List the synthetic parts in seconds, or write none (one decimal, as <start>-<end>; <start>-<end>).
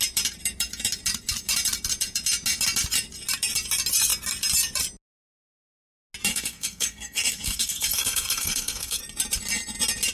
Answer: 6.3-9.0